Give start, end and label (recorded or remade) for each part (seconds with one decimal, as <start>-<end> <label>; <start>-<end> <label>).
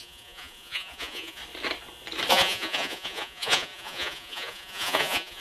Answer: 0.0-1.4 remade; 1.4-2.3 recorded; 2.3-5.4 remade